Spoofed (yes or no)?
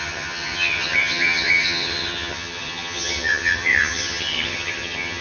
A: yes